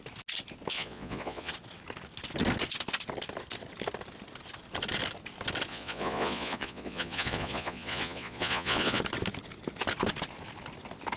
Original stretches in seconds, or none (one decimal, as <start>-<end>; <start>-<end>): 0.0-0.7; 1.5-5.7; 9.0-11.2

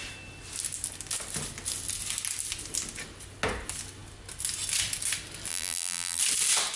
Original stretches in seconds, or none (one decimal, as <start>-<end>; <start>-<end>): 0.0-5.5; 6.2-6.8

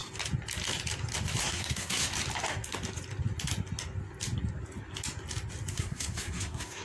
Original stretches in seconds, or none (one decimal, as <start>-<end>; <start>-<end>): 0.0-1.4; 2.1-5.7

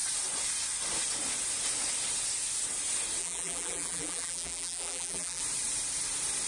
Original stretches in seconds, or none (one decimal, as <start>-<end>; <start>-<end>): 0.0-3.2; 5.4-6.5

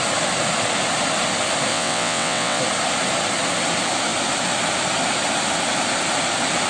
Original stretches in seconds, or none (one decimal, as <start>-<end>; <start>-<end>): 0.0-1.7; 2.6-6.7